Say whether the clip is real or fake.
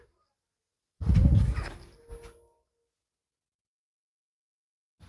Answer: real